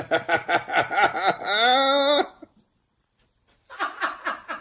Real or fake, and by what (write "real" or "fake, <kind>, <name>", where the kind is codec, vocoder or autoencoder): real